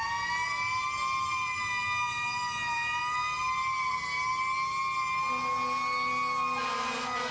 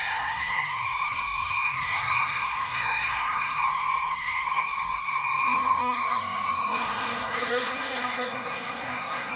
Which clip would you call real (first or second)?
first